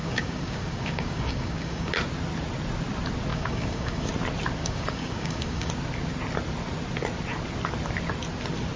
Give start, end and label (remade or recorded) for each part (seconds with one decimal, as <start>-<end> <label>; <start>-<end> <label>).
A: 0.0-1.9 remade; 1.9-3.3 recorded; 3.3-4.1 remade; 4.1-4.6 recorded; 4.6-5.7 remade; 5.7-8.8 recorded